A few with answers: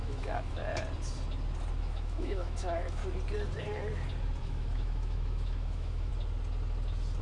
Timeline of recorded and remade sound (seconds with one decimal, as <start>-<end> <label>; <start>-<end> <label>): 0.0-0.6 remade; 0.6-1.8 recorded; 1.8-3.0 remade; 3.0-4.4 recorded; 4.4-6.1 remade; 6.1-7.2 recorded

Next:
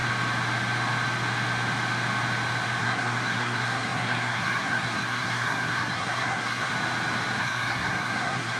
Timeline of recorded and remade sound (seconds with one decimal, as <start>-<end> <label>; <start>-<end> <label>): 0.0-2.8 recorded; 2.8-6.7 remade; 6.7-7.4 recorded; 7.4-8.6 remade

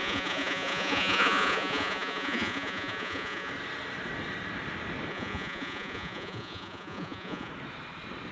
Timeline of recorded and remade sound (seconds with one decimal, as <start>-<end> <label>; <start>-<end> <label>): 0.0-3.5 remade; 3.5-5.1 recorded; 5.1-7.5 remade; 7.5-8.3 recorded

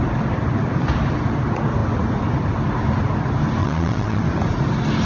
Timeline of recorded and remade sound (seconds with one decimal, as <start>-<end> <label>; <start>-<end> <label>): 0.0-3.6 recorded; 3.6-4.2 remade; 4.2-5.0 recorded